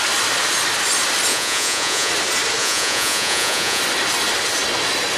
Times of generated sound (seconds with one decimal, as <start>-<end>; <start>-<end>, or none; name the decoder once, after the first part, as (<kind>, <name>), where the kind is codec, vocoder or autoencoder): 1.3-2.1 (vocoder, Vocos); 2.6-3.8